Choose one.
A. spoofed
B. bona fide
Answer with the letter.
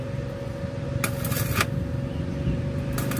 B